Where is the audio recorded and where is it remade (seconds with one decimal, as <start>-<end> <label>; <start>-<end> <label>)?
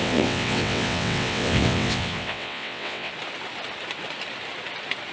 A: 0.0-3.1 remade; 3.1-5.1 recorded